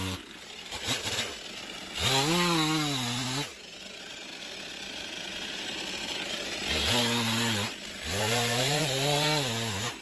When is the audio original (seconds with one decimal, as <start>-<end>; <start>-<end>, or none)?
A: 1.3-6.1; 6.6-8.2